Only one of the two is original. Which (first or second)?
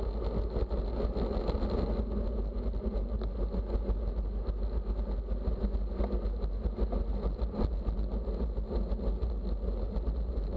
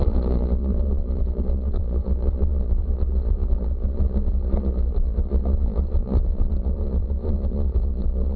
first